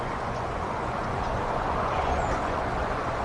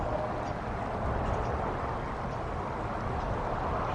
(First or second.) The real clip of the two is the second